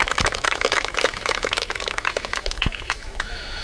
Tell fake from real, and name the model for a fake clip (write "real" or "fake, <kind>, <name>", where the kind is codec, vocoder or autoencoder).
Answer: fake, autoencoder, DAC-VAE